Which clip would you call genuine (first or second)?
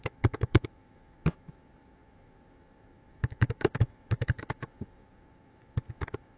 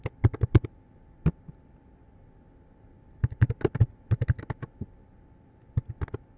second